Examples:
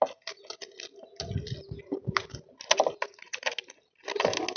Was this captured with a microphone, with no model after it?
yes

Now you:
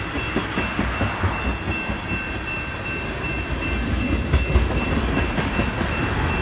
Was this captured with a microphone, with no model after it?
yes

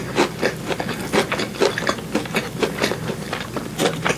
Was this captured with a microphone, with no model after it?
yes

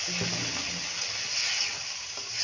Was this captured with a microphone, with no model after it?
yes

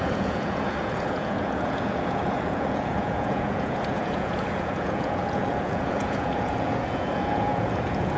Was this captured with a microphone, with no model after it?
no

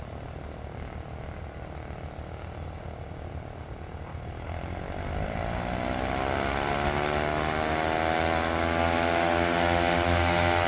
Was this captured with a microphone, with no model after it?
yes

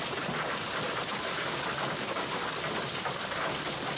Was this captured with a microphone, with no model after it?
yes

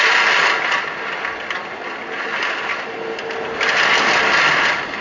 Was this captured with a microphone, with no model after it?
yes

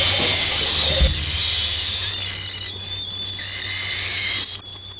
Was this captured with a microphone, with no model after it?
yes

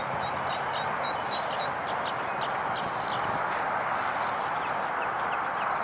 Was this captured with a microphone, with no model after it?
yes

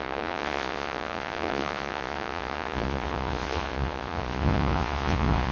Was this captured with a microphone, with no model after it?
no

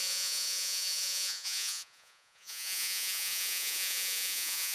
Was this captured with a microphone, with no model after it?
no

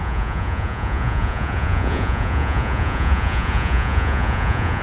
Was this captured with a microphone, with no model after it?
no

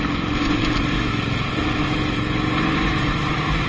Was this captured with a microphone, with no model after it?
yes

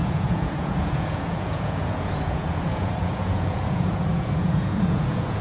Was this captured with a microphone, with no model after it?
no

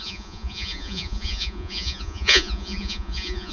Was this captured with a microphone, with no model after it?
no